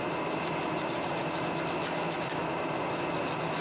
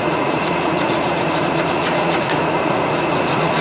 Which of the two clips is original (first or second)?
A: first